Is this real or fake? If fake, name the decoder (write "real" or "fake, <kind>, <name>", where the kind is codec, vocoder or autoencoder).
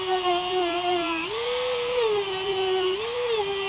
real